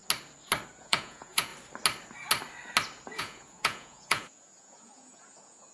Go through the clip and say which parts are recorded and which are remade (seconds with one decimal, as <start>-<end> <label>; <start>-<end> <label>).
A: 0.0-0.8 recorded; 0.8-1.5 remade; 1.5-3.2 recorded; 3.2-5.7 remade